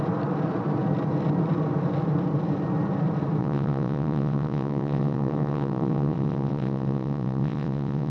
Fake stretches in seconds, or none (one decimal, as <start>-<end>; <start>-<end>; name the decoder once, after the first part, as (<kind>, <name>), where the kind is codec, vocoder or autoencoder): 3.4-8.1 (vocoder, WaveNeXt)